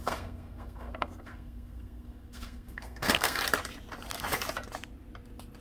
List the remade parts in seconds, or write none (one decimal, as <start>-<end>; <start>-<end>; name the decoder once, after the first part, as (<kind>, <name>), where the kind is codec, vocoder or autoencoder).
0.0-3.4 (codec, SNAC)